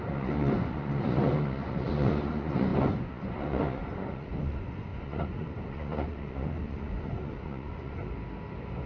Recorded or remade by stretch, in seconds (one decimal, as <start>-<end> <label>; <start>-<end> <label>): 0.0-8.0 remade; 8.0-8.9 recorded